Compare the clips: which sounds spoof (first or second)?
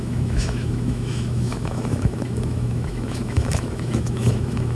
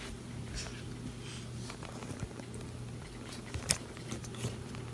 first